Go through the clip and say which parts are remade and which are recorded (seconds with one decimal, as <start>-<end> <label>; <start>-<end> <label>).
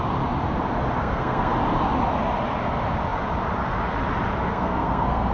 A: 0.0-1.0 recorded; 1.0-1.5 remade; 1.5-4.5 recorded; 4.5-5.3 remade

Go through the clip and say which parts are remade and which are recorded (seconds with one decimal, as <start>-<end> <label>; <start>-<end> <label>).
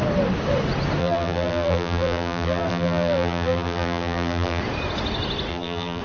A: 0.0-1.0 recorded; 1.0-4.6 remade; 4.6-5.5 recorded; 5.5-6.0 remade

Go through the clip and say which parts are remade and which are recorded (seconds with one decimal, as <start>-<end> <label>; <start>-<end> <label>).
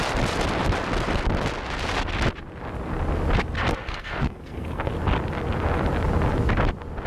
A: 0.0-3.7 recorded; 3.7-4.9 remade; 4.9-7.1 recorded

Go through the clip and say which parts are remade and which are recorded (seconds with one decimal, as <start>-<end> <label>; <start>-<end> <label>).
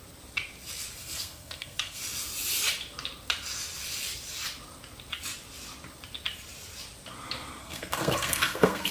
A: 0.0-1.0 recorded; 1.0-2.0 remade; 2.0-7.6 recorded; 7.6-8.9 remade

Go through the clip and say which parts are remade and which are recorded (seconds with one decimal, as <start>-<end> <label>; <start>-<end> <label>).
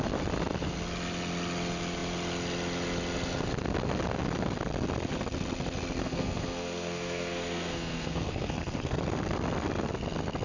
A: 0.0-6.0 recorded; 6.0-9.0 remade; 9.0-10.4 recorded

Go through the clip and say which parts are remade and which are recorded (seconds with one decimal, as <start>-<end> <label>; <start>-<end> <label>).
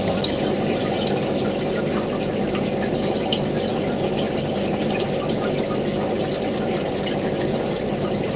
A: 0.0-8.4 recorded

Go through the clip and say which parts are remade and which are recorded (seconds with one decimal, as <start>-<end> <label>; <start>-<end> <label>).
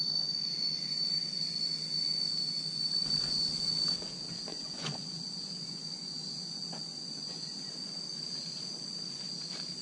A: 0.0-4.5 recorded; 4.5-7.7 remade; 7.7-9.8 recorded